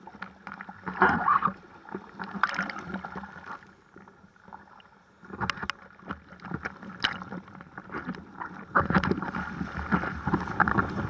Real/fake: real